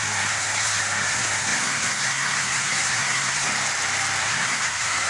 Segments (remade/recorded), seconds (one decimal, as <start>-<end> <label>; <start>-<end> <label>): 0.0-3.5 remade; 3.5-4.2 recorded; 4.2-5.1 remade